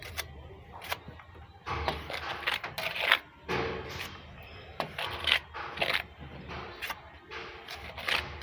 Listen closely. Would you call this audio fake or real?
real